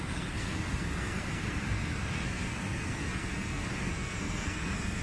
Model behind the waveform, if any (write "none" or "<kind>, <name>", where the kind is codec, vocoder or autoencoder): codec, SNAC